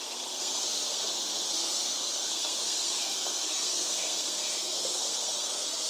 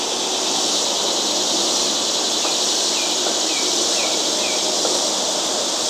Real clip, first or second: second